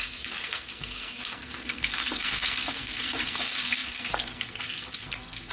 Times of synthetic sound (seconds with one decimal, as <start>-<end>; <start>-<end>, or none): 0.0-5.5